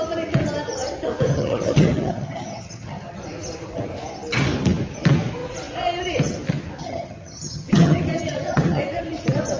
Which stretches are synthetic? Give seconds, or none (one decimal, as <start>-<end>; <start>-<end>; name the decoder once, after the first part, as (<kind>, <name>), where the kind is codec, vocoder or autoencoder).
1.3-3.2 (vocoder, HiFi-GAN); 6.8-8.8